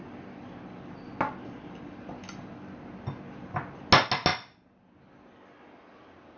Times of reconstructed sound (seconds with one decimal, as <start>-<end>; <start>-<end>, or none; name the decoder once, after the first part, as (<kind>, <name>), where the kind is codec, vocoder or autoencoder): none